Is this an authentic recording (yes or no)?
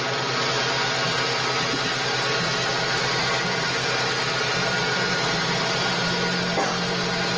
yes